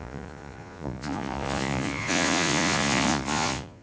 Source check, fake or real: fake